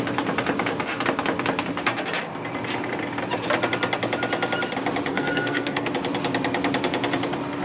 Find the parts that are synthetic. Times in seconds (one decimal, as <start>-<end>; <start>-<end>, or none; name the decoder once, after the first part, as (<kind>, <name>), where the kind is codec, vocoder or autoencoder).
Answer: 5.1-5.9 (codec, SNAC)